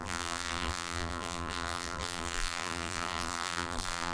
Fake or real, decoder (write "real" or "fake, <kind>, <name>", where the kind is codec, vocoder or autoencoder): fake, vocoder, BigVGAN v2